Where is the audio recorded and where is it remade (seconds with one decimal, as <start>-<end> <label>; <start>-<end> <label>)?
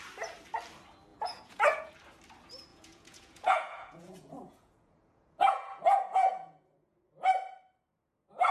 0.0-1.1 recorded; 1.1-1.9 remade; 1.9-2.7 recorded; 2.7-7.0 remade; 7.0-8.5 recorded